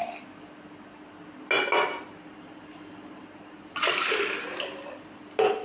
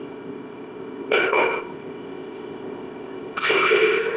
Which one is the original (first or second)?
first